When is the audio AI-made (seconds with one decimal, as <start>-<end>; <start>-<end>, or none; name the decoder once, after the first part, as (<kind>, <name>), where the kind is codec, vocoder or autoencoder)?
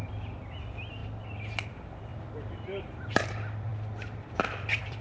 0.0-1.0 (vocoder, BigVGAN v2); 1.7-2.1; 2.8-3.7; 4.4-5.0